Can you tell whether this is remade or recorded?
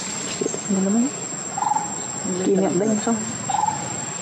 recorded